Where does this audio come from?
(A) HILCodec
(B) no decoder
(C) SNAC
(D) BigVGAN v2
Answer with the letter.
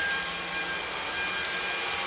B